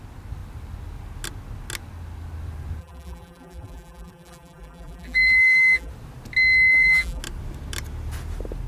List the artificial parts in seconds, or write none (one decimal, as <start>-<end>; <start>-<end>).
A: 2.8-5.9; 6.7-7.2